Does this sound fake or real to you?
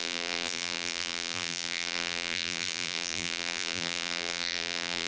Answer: fake